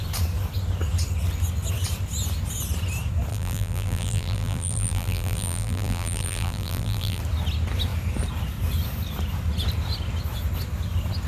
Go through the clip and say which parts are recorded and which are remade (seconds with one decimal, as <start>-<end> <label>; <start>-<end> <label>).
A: 0.0-3.3 recorded; 3.3-7.2 remade; 7.2-11.3 recorded